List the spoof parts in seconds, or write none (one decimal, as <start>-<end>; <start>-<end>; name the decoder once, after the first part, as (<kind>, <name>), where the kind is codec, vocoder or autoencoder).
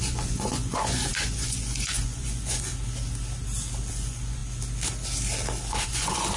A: 0.0-2.7 (vocoder, Vocos); 3.9-4.4; 5.7-6.4